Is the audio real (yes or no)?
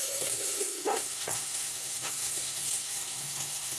no